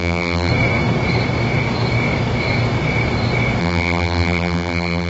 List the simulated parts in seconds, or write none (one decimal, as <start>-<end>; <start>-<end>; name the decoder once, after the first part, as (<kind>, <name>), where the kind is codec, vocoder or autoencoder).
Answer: 0.0-0.5 (vocoder, BigVGAN v2); 3.6-5.1